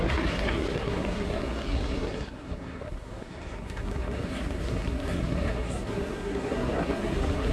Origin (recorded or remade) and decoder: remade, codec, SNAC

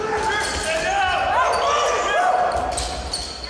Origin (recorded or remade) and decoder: recorded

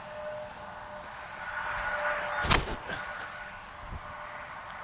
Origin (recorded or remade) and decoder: recorded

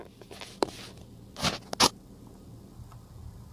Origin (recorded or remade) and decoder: recorded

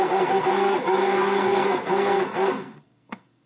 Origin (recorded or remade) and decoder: remade, codec, SNAC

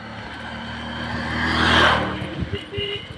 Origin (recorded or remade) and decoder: recorded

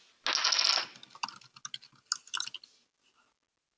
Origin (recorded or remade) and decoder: recorded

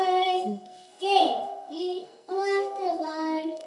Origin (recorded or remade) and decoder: remade, codec, SNAC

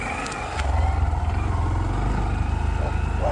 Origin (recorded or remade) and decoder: recorded